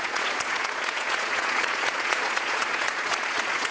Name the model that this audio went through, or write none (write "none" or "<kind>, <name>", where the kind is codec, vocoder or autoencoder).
vocoder, Vocos